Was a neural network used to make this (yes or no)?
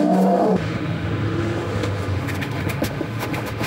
yes